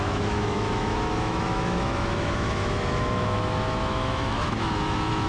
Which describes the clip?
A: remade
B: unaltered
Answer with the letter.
A